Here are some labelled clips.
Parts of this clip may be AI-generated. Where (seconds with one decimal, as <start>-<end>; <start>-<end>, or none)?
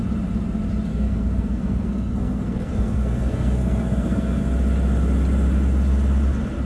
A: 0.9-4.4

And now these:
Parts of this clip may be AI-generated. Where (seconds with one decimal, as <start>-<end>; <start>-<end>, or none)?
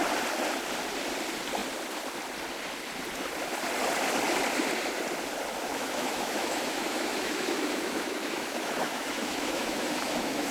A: 5.7-10.5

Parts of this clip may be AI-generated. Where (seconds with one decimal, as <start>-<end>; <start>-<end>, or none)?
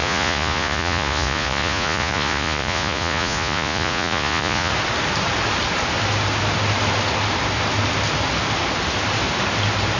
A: 0.0-4.7